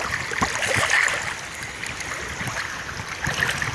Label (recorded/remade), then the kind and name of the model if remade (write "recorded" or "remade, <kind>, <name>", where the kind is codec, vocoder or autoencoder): recorded